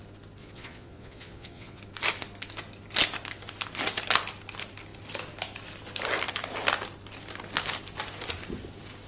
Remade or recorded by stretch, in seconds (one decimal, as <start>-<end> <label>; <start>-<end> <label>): 0.0-0.4 recorded; 0.4-1.8 remade; 1.8-9.1 recorded